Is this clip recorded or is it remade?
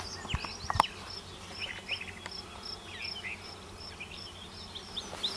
recorded